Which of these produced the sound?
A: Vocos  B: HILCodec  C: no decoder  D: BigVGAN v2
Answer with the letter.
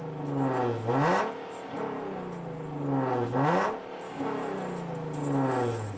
C